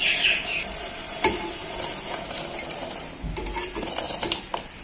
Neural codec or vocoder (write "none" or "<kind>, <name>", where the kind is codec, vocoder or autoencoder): none